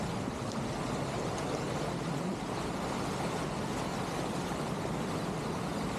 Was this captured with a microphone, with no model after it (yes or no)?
yes